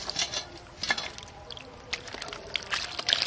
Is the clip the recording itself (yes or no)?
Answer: yes